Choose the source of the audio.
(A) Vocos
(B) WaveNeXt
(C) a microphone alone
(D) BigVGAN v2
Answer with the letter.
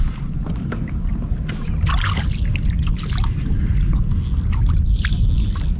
C